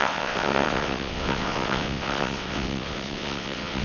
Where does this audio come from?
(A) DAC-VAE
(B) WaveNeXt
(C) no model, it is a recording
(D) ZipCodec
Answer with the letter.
B